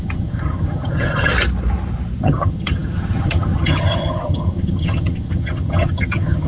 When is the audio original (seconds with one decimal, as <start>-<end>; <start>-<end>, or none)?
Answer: 1.3-2.2